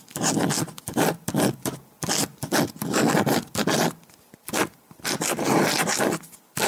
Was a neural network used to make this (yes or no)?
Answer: no